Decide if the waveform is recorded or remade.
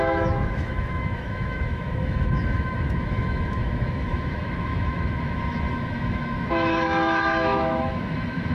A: remade